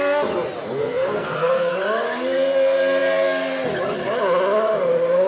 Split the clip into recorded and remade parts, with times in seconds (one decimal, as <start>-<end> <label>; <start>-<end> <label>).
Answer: 0.0-0.6 recorded; 0.6-1.7 remade; 1.7-5.3 recorded